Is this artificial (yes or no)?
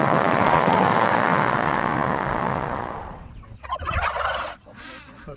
yes